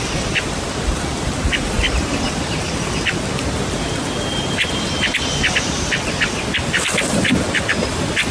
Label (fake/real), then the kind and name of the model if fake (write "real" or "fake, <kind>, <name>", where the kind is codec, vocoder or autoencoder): fake, vocoder, BigVGAN v2